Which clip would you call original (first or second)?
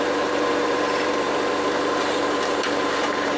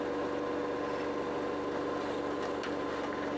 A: second